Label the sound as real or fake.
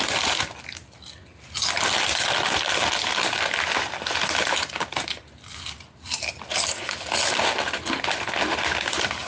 real